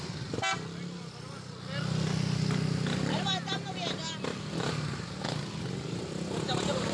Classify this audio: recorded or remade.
recorded